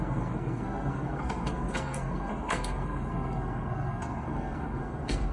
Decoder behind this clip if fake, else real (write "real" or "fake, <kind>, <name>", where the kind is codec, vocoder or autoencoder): fake, codec, SNAC